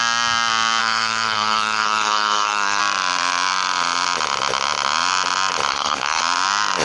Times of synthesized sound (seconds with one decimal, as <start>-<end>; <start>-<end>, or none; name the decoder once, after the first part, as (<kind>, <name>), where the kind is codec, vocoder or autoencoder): 0.8-2.8 (codec, SNAC); 5.7-6.2